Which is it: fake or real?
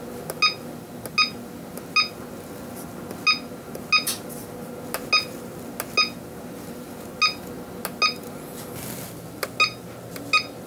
real